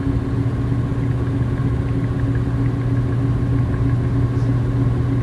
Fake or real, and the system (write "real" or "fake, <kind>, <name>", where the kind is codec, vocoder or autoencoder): real